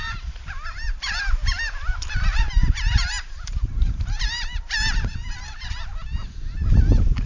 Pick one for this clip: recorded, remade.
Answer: remade